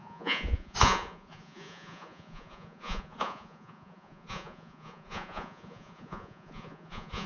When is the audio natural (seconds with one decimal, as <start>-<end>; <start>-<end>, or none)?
none